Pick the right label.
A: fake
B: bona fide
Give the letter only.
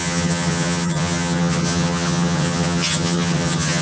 A